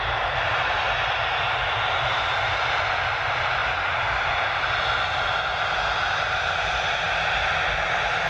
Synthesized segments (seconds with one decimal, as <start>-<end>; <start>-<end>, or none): none